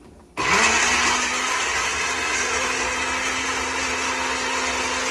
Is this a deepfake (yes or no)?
no